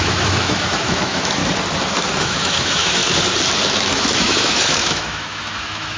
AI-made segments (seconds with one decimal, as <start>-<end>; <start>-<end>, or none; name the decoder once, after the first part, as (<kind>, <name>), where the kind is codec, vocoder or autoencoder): 0.0-1.4 (autoencoder, DAC-VAE); 2.2-3.0; 3.9-6.0